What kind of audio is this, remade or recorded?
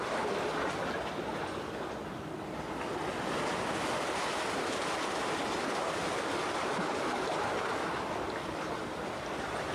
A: recorded